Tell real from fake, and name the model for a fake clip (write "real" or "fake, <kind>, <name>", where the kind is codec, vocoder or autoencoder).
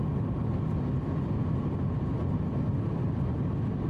real